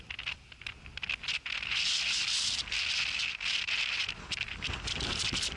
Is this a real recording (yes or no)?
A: yes